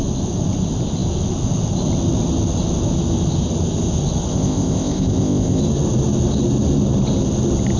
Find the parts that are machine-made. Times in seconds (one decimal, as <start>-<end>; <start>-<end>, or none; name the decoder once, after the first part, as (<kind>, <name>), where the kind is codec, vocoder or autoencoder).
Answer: 4.3-5.6 (codec, ZipCodec)